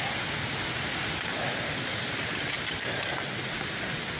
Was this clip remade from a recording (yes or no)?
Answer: no